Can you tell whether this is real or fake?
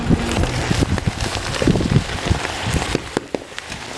real